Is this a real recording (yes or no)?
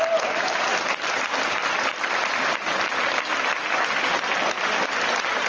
no